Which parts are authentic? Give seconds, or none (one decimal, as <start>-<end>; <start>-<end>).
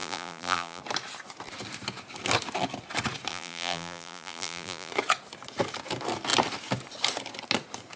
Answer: 0.8-3.3; 4.9-8.0